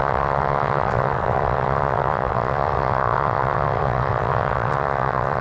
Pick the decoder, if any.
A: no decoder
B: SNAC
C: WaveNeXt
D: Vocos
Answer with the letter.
C